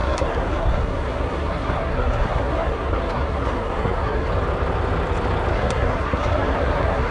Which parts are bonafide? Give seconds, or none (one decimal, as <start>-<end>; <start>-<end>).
4.3-5.5